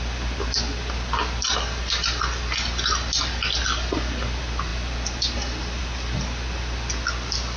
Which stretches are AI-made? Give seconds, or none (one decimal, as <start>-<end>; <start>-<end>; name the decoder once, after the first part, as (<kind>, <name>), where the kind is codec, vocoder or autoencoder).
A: none